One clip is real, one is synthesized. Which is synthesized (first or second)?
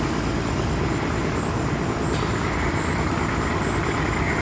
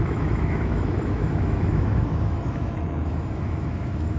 second